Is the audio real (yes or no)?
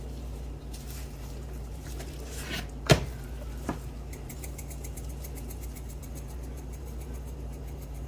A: no